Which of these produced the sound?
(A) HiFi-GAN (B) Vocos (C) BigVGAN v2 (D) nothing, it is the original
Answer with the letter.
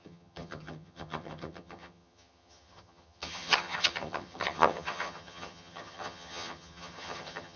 A